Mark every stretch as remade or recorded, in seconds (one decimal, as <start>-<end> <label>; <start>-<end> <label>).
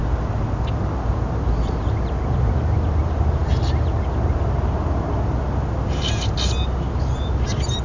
0.0-7.8 recorded